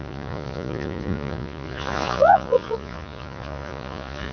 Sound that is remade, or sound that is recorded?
remade